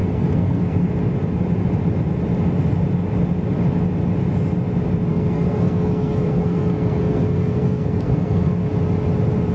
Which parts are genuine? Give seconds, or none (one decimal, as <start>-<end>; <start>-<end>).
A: 0.9-5.1; 8.7-9.5